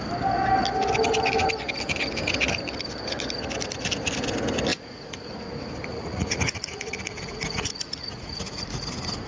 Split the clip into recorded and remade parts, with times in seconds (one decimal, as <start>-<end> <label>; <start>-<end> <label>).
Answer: 0.0-4.7 recorded; 4.7-5.3 remade; 5.3-5.9 recorded; 5.9-8.9 remade; 8.9-9.3 recorded